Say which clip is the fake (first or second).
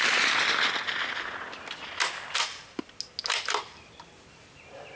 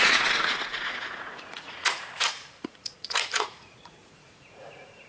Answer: second